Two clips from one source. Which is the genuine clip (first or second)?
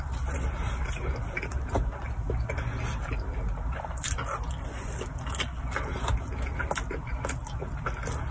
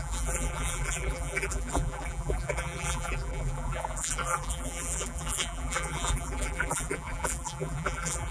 first